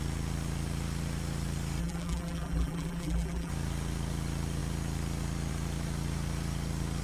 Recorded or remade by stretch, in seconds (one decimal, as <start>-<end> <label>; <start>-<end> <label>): 0.0-1.8 recorded; 1.8-3.5 remade; 3.5-7.0 recorded